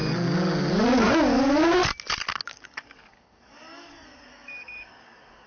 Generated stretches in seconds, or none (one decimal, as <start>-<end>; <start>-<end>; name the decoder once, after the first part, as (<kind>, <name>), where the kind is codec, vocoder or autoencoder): 0.7-1.8 (codec, DAC); 2.5-5.5